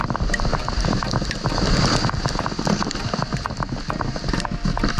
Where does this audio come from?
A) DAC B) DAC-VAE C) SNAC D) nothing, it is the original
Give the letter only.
D